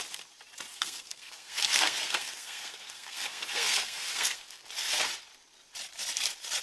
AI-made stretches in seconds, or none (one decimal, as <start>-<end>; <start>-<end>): 0.7-4.7